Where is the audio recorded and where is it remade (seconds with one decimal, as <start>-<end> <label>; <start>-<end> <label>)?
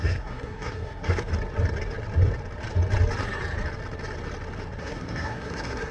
0.0-1.3 remade; 1.3-4.8 recorded; 4.8-5.9 remade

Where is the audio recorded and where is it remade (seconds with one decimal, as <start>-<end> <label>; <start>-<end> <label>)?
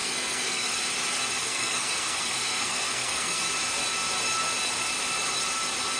0.0-0.7 remade; 0.7-1.4 recorded; 1.4-3.4 remade; 3.4-6.0 recorded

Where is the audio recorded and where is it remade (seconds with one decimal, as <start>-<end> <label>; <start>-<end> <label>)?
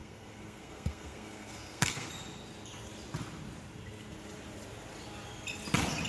0.0-2.1 remade; 2.1-6.1 recorded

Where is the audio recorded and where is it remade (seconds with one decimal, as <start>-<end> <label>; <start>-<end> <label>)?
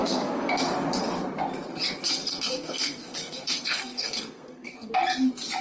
0.0-0.5 remade; 0.5-2.3 recorded; 2.3-4.9 remade; 4.9-5.6 recorded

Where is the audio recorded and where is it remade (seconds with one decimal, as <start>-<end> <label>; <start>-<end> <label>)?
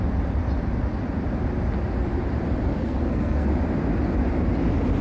0.0-2.7 recorded; 2.7-3.5 remade; 3.5-5.0 recorded